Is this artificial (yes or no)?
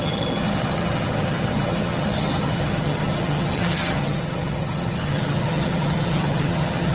yes